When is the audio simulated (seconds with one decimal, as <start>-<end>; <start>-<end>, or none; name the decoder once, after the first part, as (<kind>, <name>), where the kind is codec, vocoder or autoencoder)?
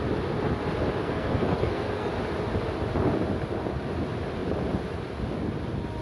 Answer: 1.0-2.1 (codec, SNAC)